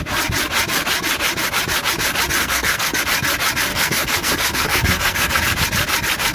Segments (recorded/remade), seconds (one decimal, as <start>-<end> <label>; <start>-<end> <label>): 0.0-2.4 recorded; 2.4-3.0 remade; 3.0-3.7 recorded; 3.7-5.4 remade; 5.4-6.3 recorded